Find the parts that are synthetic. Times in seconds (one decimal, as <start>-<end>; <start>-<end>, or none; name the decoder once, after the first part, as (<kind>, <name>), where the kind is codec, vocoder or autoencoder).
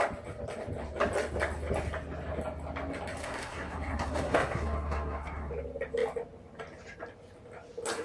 3.2-5.5 (codec, SNAC)